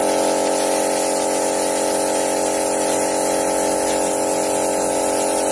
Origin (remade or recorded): recorded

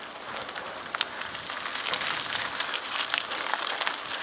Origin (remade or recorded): recorded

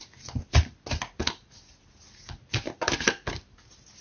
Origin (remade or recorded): recorded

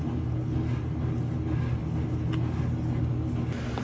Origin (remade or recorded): recorded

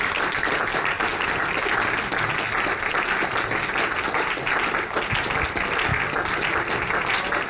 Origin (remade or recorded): recorded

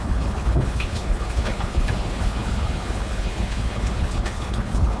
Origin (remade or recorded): remade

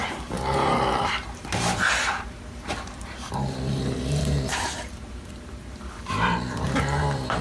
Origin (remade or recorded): remade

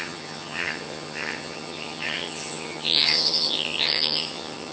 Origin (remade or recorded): remade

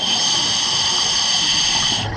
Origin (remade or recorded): recorded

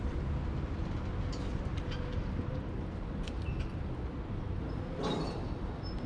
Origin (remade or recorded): recorded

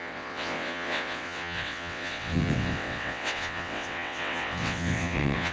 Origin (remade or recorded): remade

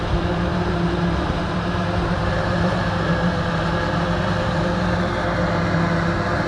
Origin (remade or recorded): remade